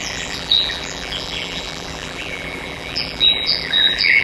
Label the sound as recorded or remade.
remade